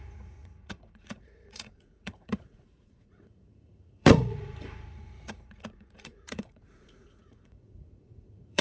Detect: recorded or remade remade